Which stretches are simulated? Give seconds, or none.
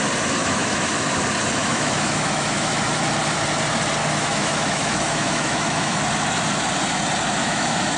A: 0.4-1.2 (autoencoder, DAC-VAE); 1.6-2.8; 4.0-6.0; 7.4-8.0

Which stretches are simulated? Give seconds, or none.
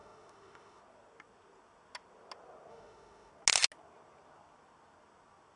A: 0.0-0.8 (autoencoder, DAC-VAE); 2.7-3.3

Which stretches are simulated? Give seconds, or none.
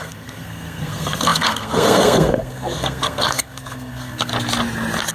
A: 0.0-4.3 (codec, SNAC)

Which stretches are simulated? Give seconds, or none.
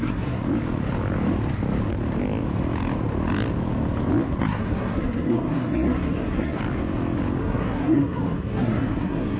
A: 0.0-0.4 (codec, SNAC); 4.4-6.6; 7.4-9.4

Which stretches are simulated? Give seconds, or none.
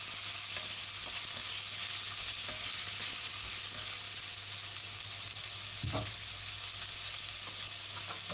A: none